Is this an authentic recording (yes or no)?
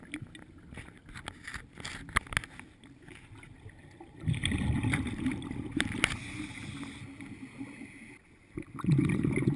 yes